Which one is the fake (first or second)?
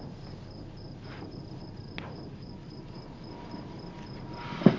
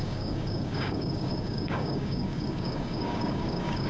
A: second